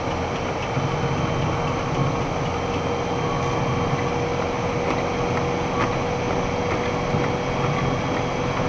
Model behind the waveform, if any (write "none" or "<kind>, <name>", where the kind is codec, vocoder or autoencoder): none